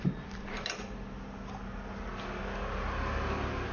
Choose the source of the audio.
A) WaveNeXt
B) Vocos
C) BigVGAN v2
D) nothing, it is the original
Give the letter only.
D